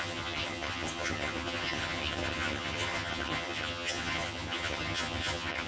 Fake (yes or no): yes